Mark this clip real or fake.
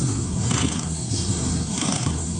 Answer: fake